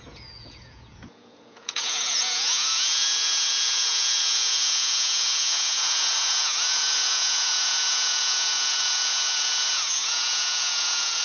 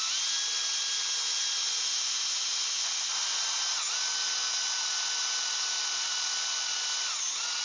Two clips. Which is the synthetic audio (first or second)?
first